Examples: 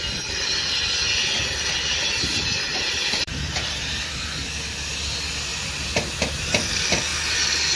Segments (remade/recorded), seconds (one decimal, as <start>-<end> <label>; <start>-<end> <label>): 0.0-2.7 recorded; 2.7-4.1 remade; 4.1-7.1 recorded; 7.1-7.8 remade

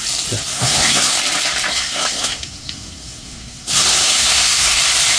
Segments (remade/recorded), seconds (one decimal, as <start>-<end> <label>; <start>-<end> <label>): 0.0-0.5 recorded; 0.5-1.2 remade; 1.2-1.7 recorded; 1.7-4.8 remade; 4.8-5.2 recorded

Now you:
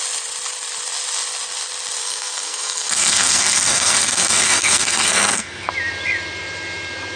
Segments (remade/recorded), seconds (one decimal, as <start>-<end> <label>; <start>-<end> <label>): 0.0-2.0 recorded; 2.0-5.7 remade; 5.7-7.2 recorded

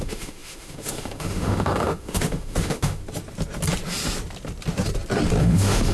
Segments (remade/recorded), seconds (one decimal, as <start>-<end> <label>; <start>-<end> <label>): 0.0-3.0 remade; 3.0-5.4 recorded; 5.4-5.9 remade